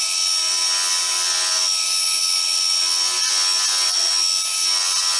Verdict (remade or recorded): recorded